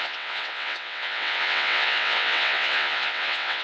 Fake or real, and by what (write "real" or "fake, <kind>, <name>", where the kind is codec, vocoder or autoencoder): fake, vocoder, WaveNeXt